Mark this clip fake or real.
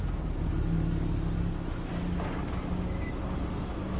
real